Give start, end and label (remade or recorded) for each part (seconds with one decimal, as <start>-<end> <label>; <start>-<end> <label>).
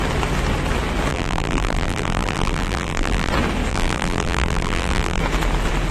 0.0-1.1 recorded; 1.1-3.3 remade; 3.3-3.7 recorded; 3.7-5.2 remade; 5.2-5.9 recorded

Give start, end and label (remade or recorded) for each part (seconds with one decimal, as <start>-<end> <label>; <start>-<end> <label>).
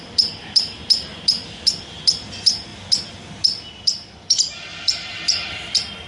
0.0-2.7 remade; 2.7-3.7 recorded; 3.7-6.1 remade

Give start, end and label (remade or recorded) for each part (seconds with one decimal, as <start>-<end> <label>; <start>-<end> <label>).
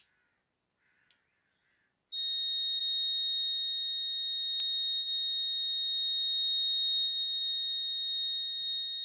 0.0-9.0 recorded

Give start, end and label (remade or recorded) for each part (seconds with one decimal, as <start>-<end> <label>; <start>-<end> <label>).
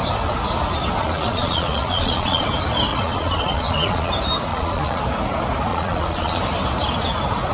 0.0-1.0 recorded; 1.0-2.4 remade; 2.4-2.9 recorded; 2.9-4.1 remade; 4.1-4.5 recorded; 4.5-5.0 remade; 5.0-5.7 recorded; 5.7-6.4 remade; 6.4-7.5 recorded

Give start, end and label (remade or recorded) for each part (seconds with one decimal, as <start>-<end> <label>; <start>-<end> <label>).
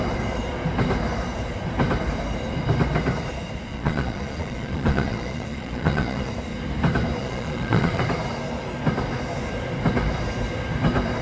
0.0-3.7 recorded; 3.7-6.3 remade; 6.3-7.2 recorded; 7.2-8.0 remade; 8.0-11.2 recorded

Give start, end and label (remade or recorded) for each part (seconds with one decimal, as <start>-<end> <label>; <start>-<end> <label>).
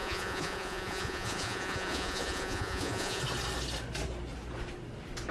0.0-3.2 remade; 3.2-5.3 recorded